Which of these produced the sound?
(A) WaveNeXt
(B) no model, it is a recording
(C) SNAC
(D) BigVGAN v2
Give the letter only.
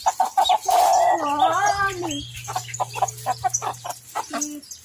D